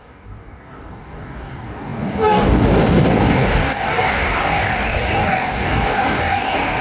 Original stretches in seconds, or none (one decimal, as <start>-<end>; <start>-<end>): none